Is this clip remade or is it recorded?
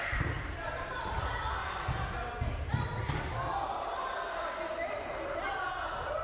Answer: recorded